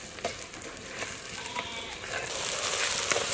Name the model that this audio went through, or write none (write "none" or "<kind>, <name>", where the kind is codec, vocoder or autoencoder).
none